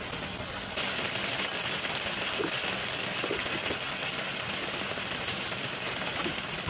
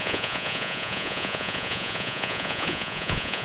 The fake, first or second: second